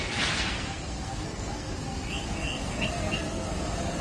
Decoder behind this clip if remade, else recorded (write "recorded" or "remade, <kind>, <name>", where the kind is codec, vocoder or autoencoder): remade, codec, SNAC